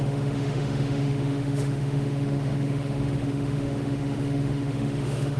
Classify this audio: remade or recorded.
remade